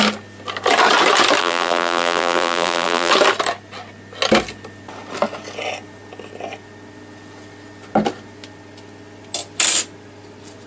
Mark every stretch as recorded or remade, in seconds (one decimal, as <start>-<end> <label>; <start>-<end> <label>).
0.0-1.4 recorded; 1.4-3.1 remade; 3.1-10.7 recorded